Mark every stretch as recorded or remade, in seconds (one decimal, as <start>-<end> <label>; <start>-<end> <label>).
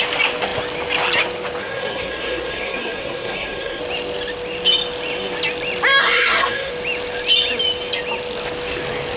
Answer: 0.0-1.6 recorded; 1.6-3.8 remade; 3.8-6.0 recorded; 6.0-6.7 remade; 6.7-9.2 recorded